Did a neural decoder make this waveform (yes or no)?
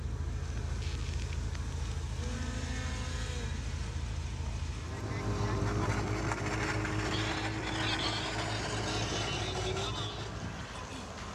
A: no